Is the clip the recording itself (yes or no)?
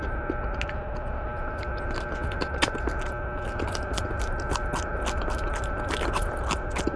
yes